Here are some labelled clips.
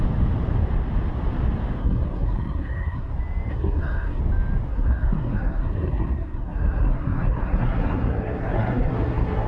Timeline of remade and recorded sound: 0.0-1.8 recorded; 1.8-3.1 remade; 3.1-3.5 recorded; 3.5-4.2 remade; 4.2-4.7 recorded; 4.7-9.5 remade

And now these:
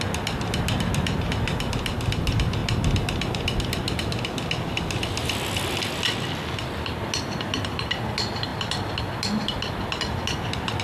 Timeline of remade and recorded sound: 0.0-10.8 recorded

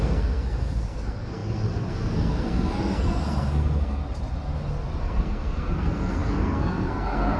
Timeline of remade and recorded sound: 0.0-4.0 remade; 4.0-5.0 recorded; 5.0-7.4 remade

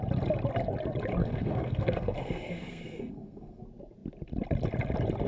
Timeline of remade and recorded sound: 0.0-1.2 recorded; 1.2-3.6 remade; 3.6-5.3 recorded

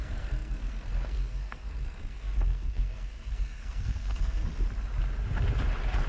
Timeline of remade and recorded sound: 0.0-4.5 remade; 4.5-6.1 recorded

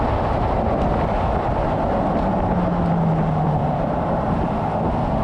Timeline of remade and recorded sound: 0.0-5.2 recorded

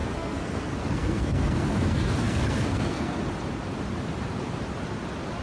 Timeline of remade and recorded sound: 0.0-3.2 remade; 3.2-5.4 recorded

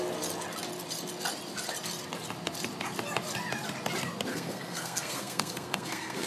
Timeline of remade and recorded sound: 0.0-4.3 recorded; 4.3-6.3 remade